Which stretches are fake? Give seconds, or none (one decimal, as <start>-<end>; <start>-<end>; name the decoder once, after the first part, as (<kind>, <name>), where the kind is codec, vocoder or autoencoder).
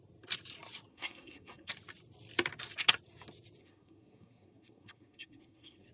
0.9-1.7 (codec, SNAC); 3.6-5.9